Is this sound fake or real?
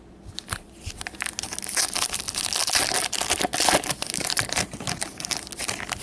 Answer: real